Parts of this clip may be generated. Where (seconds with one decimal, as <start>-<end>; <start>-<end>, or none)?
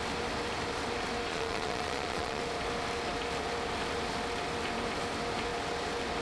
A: 1.3-2.4